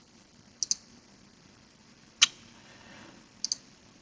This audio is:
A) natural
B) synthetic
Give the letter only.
A